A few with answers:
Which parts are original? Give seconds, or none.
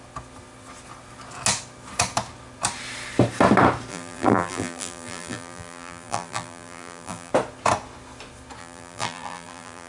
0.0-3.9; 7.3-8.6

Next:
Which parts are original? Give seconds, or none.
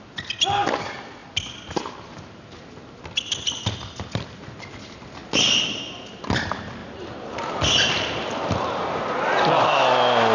0.0-10.3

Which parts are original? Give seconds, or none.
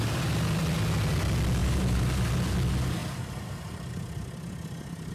0.0-1.6; 2.3-3.0; 3.9-5.1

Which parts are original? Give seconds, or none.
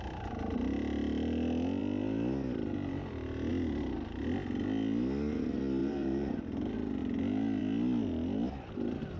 0.0-5.8; 6.4-9.2